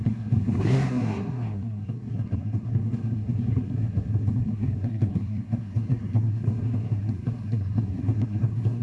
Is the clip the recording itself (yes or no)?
no